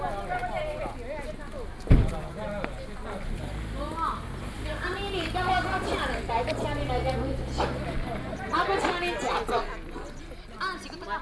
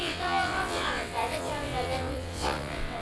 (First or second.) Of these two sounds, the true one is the first